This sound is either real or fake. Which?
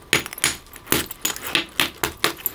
real